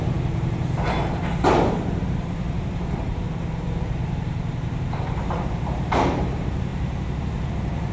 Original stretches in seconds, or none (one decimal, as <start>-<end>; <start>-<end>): 6.7-7.5